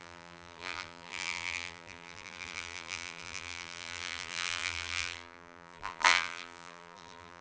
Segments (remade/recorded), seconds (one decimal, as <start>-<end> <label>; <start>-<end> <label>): 0.0-7.4 remade